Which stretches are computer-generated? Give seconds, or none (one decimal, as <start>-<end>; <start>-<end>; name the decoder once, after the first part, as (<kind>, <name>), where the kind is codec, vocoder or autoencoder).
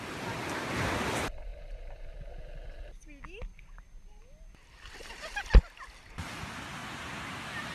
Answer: 6.8-7.7 (vocoder, BigVGAN v2)